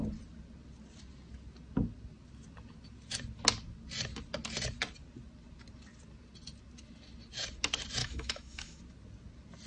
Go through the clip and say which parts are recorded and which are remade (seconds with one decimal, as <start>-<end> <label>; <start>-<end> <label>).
0.0-8.0 recorded; 8.0-8.8 remade; 8.8-9.7 recorded